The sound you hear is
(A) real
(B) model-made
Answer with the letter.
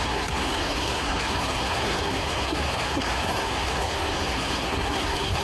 B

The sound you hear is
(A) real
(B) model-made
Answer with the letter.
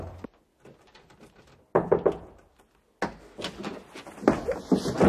A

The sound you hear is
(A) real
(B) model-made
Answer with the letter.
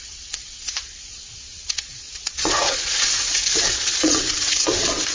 B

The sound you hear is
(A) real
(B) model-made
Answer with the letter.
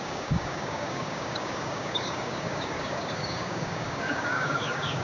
B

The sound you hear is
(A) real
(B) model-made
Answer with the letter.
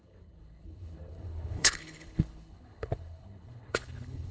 B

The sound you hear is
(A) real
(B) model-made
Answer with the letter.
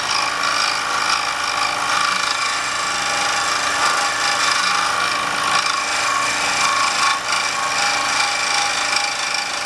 A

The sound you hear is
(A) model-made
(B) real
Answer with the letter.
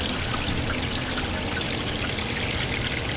B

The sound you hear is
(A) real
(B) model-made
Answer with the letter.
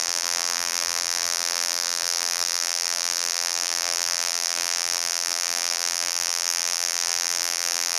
B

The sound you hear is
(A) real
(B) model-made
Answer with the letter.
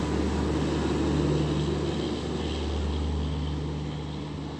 A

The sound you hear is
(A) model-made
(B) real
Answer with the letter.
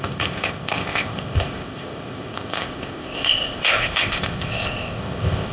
A